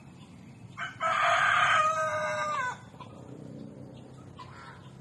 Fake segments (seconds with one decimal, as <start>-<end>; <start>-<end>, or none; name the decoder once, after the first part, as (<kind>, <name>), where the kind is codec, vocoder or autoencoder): none